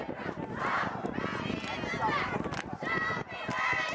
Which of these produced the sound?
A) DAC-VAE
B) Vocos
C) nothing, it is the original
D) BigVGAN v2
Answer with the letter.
C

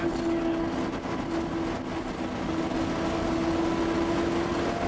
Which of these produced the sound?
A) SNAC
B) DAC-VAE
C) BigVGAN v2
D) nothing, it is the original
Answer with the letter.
D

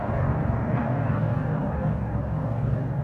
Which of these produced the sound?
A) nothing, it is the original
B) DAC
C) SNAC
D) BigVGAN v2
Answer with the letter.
B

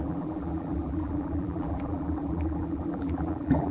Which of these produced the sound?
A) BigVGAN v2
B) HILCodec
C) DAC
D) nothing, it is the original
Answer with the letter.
A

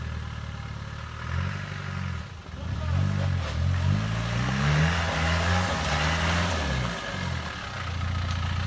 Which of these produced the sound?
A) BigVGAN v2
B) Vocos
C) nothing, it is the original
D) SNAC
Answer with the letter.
C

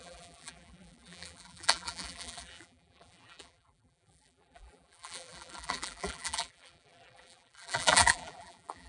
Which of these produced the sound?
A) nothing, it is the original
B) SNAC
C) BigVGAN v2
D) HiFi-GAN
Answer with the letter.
C